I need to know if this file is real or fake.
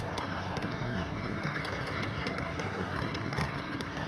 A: fake